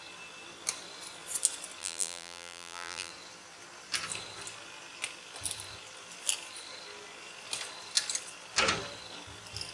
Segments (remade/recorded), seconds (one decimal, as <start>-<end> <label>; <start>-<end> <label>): 0.0-1.8 recorded; 1.8-3.1 remade; 3.1-9.7 recorded